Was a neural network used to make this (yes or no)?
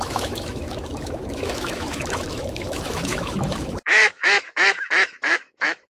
yes